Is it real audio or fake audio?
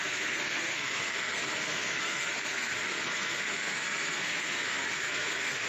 fake